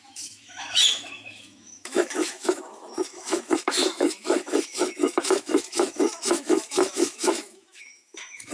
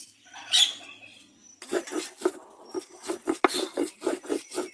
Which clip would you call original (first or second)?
second